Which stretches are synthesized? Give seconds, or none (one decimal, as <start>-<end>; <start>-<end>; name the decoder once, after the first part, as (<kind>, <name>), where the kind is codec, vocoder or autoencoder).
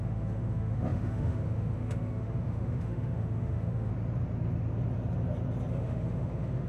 0.0-3.9 (autoencoder, DAC-VAE); 5.7-6.7